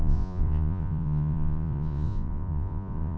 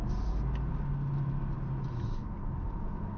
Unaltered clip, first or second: second